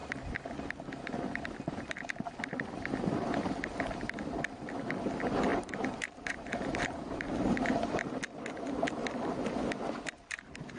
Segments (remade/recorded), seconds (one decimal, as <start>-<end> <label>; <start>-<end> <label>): 0.0-5.5 recorded; 5.5-8.1 remade; 8.1-10.8 recorded